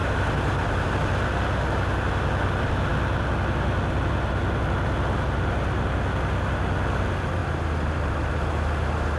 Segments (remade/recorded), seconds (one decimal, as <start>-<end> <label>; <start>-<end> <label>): 0.0-1.1 remade; 1.1-7.4 recorded; 7.4-9.2 remade